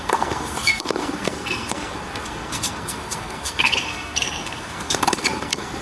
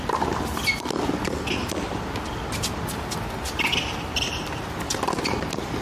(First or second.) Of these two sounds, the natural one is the second